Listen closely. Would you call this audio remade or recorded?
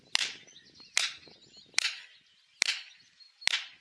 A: recorded